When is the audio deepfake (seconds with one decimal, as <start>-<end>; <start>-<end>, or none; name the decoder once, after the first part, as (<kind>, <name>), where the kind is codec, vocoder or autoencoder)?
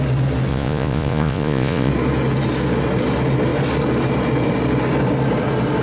0.5-1.9 (vocoder, Vocos)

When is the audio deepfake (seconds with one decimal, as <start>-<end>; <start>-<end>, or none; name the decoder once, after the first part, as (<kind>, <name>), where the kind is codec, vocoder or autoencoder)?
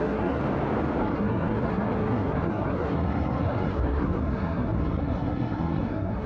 0.0-0.4 (codec, SNAC); 1.0-6.3